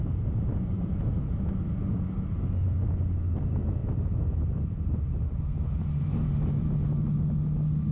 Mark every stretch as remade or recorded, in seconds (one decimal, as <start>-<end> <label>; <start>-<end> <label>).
0.0-1.4 remade; 1.4-3.8 recorded; 3.8-6.0 remade; 6.0-7.9 recorded